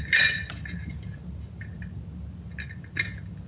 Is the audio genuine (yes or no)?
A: yes